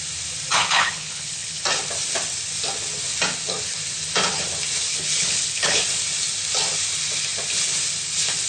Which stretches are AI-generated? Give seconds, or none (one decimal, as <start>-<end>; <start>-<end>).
0.5-1.6; 4.9-5.8